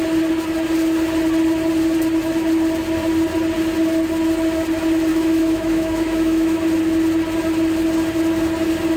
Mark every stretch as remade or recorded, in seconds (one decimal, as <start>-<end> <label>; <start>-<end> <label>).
0.0-5.1 recorded; 5.1-6.6 remade; 6.6-9.0 recorded